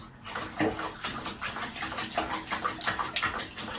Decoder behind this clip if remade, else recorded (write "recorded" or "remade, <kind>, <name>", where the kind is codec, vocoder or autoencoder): recorded